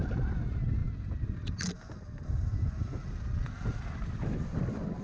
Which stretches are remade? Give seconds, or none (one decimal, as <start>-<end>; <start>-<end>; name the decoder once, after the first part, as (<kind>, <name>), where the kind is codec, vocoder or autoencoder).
none